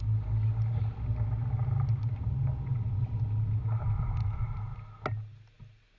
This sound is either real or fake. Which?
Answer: real